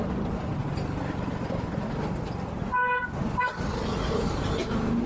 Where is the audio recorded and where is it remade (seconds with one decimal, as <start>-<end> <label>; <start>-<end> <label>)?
0.0-2.8 recorded; 2.8-4.1 remade; 4.1-5.1 recorded